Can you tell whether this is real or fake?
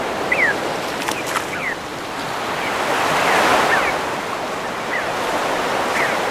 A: real